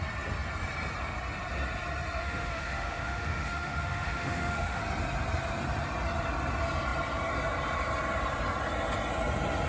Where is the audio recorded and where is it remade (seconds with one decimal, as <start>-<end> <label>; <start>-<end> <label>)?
0.0-2.2 recorded; 2.2-4.8 remade; 4.8-9.7 recorded